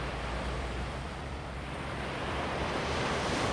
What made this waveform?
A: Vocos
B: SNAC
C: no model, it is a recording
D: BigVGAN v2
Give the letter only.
D